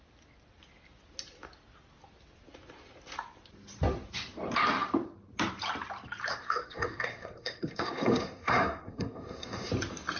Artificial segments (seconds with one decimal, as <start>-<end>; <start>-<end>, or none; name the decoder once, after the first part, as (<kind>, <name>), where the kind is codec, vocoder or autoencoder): 6.3-9.7 (codec, SNAC)